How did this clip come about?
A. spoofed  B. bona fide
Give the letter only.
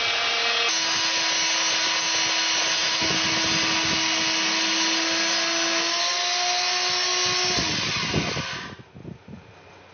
B